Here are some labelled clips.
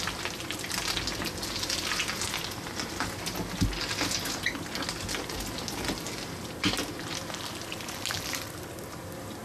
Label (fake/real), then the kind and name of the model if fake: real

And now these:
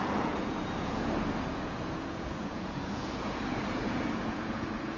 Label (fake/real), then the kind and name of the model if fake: fake, vocoder, Vocos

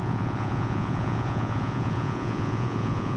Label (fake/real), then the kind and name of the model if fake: fake, vocoder, Vocos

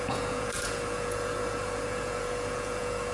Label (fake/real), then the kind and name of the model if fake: fake, vocoder, Vocos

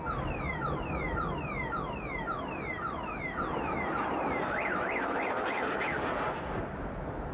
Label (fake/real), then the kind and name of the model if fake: real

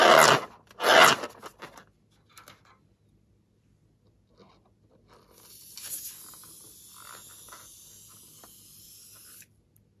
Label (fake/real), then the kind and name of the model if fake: real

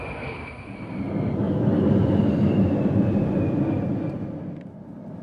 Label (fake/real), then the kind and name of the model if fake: real